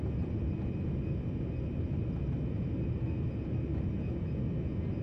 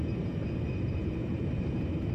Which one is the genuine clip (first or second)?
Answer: first